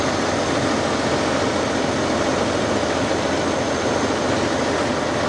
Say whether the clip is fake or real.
real